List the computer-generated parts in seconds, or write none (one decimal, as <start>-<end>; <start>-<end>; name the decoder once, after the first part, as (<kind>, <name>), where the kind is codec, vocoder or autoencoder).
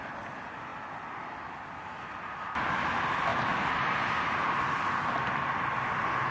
3.3-5.1 (vocoder, BigVGAN v2)